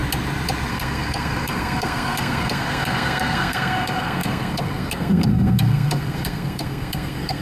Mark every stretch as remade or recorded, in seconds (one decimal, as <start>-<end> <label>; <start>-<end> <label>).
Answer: 0.0-0.7 recorded; 0.7-7.4 remade